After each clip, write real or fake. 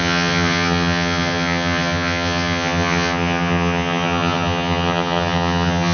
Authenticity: fake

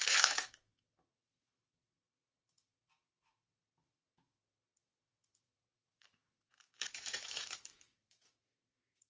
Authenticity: fake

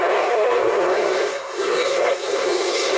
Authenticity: fake